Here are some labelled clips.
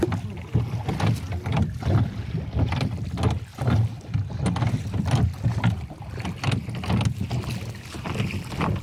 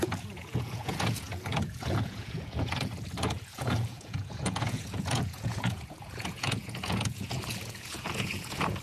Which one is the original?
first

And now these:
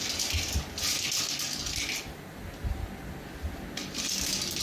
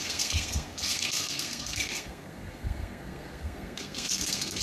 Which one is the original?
first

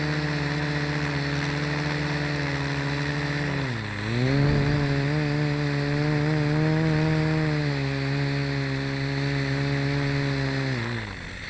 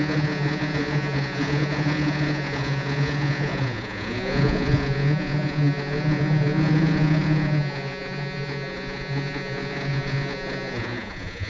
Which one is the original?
first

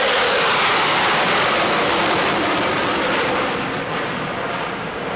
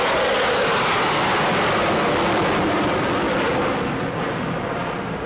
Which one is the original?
second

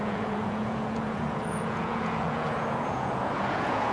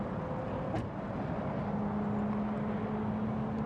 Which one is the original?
second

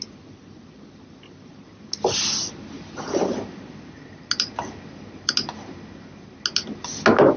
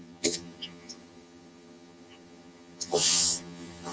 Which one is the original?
first